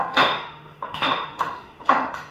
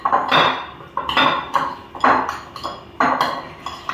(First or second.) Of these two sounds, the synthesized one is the first